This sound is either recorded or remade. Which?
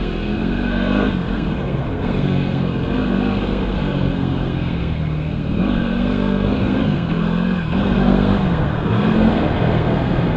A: remade